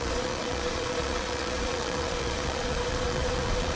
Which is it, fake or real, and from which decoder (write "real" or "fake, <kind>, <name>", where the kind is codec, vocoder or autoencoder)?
fake, vocoder, Vocos